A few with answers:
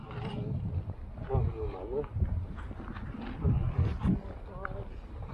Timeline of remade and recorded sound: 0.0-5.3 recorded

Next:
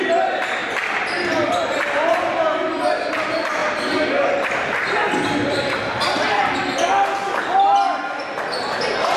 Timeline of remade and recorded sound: 0.0-9.2 recorded

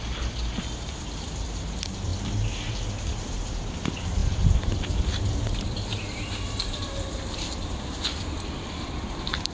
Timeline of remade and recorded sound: 0.0-2.1 remade; 2.1-2.7 recorded; 2.7-9.5 remade

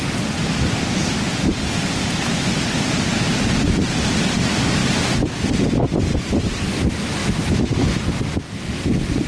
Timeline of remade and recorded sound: 0.0-4.8 recorded; 4.8-5.7 remade; 5.7-7.2 recorded; 7.2-8.1 remade; 8.1-9.3 recorded

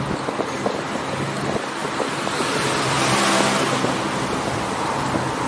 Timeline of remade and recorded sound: 0.0-1.8 recorded; 1.8-4.0 remade; 4.0-5.5 recorded

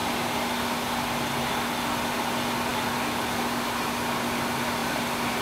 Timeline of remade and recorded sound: 0.0-1.4 remade; 1.4-2.7 recorded; 2.7-3.4 remade; 3.4-5.4 recorded